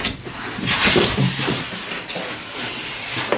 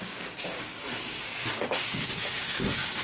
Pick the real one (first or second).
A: first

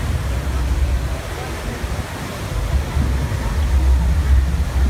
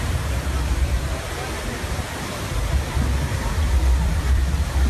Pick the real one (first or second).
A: first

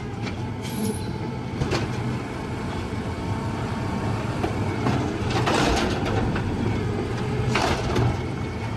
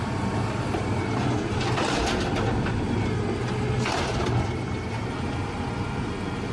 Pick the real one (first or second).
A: second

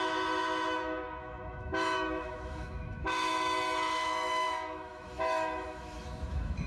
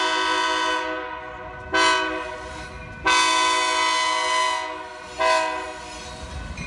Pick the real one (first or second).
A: second